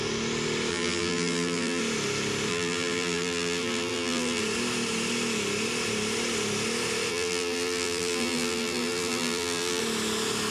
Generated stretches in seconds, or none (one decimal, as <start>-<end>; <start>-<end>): 0.7-1.8; 2.5-4.4; 7.1-9.8